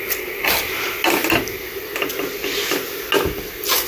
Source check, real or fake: real